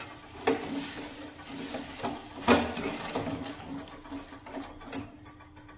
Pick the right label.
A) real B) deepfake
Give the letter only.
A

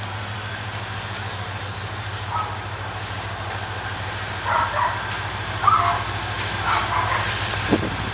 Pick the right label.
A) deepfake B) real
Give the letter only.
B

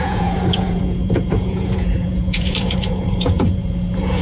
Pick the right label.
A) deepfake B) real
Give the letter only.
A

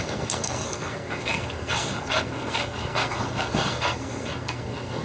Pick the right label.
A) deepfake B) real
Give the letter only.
A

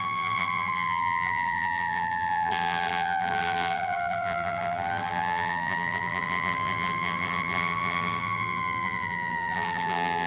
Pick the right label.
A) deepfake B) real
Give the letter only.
A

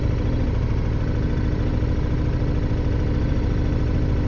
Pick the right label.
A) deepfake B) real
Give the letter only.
B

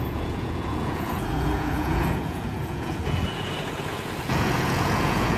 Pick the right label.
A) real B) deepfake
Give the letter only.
B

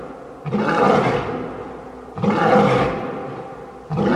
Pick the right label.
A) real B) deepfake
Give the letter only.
A